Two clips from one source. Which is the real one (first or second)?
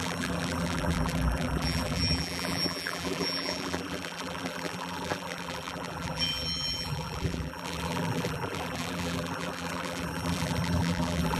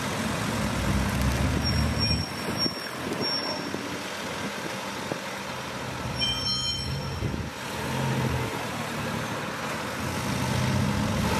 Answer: second